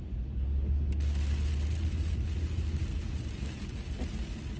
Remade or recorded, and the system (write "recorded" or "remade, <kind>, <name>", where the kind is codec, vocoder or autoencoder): recorded